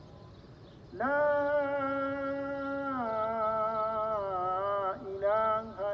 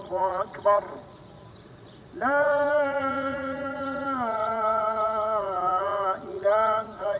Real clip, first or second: first